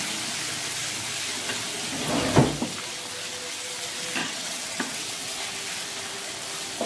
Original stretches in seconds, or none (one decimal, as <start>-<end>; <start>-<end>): 0.0-4.2; 5.4-6.9